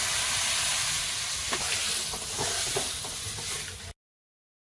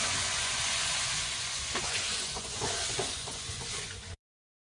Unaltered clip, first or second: first